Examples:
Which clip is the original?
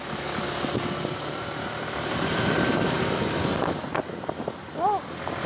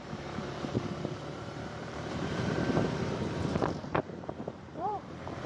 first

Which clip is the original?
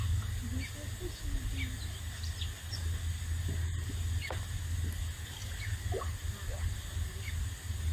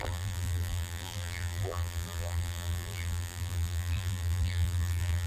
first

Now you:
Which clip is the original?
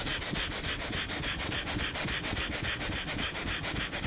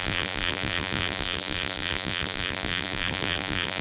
first